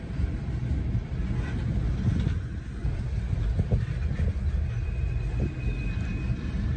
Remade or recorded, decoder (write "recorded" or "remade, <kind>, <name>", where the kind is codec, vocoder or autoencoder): recorded